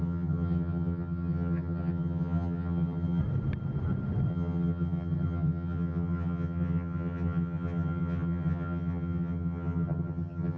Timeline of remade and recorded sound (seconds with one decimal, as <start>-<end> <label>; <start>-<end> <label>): 0.0-3.2 remade; 3.2-4.3 recorded; 4.3-10.6 remade